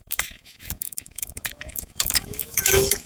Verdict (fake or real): fake